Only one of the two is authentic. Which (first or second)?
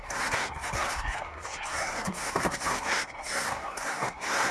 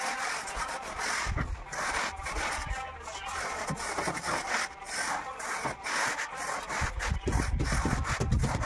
second